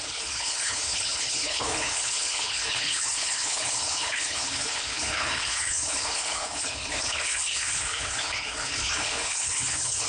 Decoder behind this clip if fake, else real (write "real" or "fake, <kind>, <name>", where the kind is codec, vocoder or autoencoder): fake, codec, HILCodec